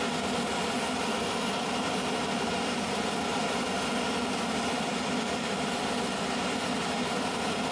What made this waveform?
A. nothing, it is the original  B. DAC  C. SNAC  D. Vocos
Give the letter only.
A